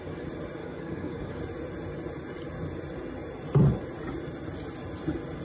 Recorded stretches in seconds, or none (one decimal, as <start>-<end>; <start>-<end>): 0.0-0.6; 1.4-5.4